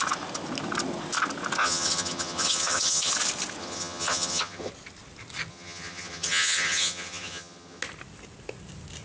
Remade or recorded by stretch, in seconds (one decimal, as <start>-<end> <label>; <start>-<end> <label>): 0.0-1.6 recorded; 1.6-3.1 remade; 3.1-3.6 recorded; 3.6-4.7 remade; 4.7-5.5 recorded; 5.5-7.8 remade; 7.8-9.0 recorded